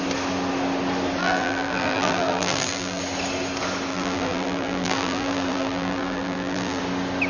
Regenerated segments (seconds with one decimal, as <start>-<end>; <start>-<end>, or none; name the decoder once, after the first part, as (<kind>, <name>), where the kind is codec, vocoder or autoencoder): 1.2-3.0 (vocoder, BigVGAN v2); 3.9-6.8